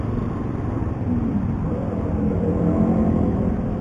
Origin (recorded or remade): remade